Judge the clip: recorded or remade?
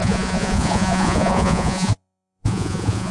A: remade